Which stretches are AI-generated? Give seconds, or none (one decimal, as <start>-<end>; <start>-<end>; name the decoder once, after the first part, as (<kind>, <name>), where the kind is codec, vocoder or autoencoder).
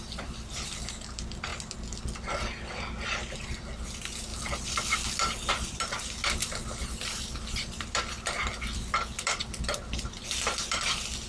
0.0-1.5 (vocoder, BigVGAN v2); 3.5-4.3; 5.5-11.3